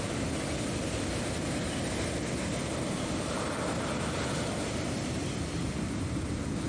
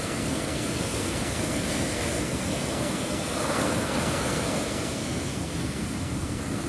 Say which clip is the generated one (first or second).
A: second